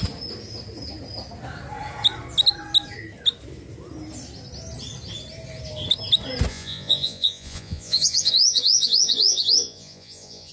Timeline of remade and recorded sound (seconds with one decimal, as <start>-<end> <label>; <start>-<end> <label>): 0.0-6.5 recorded; 6.5-10.5 remade